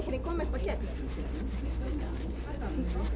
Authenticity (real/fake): real